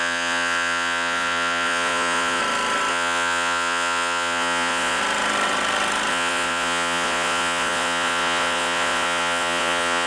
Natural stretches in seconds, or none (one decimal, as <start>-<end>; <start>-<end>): 2.4-2.9; 5.0-6.1